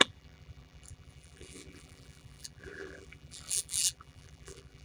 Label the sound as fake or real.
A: fake